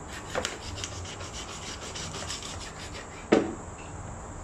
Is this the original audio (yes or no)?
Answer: yes